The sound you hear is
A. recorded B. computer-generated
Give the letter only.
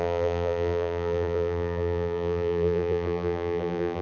B